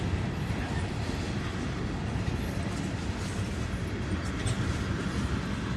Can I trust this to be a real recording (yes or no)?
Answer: yes